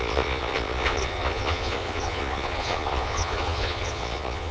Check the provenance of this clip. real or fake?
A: fake